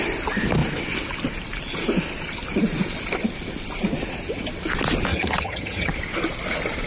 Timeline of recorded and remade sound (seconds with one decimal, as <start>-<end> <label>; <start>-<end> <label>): 0.0-5.1 recorded; 5.1-5.9 remade; 5.9-6.9 recorded